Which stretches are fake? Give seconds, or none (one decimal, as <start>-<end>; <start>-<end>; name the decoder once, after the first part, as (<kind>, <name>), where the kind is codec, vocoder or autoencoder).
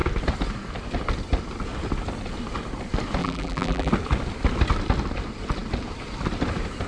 3.2-3.9 (vocoder, BigVGAN v2)